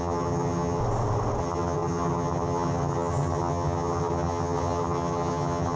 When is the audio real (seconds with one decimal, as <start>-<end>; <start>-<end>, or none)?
0.8-1.4